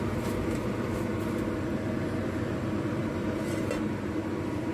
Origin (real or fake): real